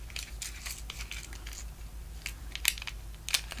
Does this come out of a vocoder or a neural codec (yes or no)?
no